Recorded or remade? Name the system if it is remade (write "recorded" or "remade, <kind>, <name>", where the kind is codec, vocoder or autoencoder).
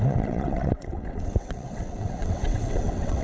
remade, vocoder, WaveNeXt